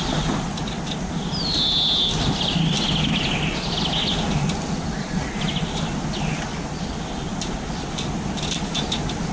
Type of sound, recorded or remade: recorded